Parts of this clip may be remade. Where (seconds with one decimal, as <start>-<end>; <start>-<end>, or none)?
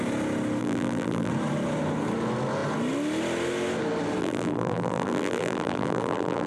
0.6-1.3; 4.2-6.5